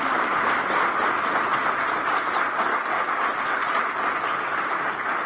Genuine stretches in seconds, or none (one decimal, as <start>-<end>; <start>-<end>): 0.0-2.7; 3.3-5.3